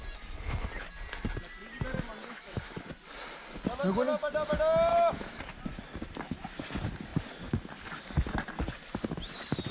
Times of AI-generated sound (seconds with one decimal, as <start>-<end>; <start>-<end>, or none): 2.2-2.8; 4.9-5.4